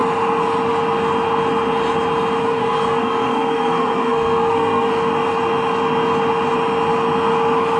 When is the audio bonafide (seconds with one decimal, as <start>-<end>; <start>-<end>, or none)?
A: 0.0-2.4; 4.9-7.8